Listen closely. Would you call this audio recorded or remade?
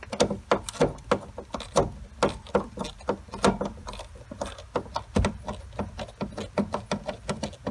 recorded